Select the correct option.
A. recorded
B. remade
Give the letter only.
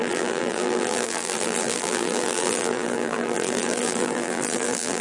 B